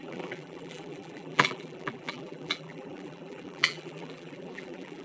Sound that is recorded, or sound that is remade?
remade